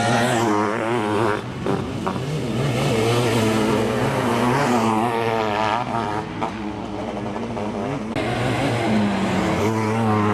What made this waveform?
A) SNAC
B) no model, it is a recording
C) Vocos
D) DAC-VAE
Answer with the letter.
B